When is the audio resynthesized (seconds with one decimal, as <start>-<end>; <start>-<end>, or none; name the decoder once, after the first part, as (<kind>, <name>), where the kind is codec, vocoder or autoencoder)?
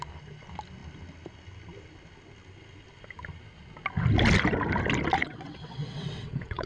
5.2-6.7 (vocoder, WaveNeXt)